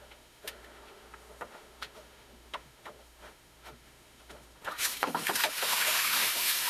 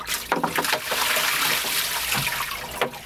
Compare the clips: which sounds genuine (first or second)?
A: second